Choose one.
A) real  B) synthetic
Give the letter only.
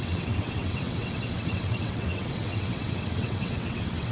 B